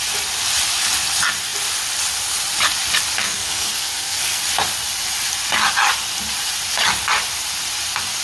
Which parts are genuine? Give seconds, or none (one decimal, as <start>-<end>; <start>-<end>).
0.0-3.2; 4.4-8.2